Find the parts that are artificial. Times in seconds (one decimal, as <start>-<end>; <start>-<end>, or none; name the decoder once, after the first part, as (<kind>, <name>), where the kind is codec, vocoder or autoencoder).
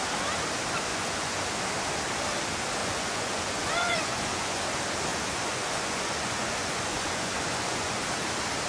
0.9-1.4 (vocoder, Vocos); 2.8-4.6; 5.1-8.0